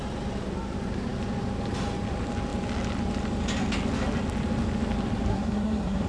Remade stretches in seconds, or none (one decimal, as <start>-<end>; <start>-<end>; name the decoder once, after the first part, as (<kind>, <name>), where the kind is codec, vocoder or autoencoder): 5.3-6.1 (codec, SNAC)